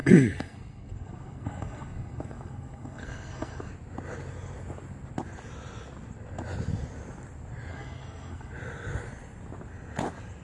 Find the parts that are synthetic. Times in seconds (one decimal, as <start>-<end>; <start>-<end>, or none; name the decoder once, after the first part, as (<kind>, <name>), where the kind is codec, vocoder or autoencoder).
0.0-3.7 (codec, SNAC); 7.7-8.5